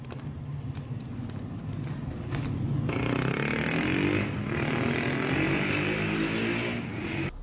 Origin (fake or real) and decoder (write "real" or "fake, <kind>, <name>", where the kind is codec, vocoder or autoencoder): real